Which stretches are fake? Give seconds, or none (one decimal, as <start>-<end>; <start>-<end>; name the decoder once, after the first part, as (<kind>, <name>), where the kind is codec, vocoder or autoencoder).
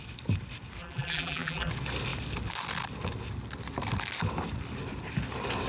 0.8-1.7 (vocoder, BigVGAN v2)